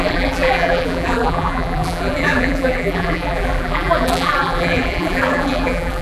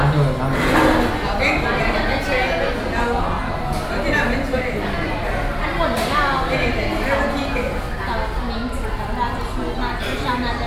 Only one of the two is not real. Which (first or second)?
first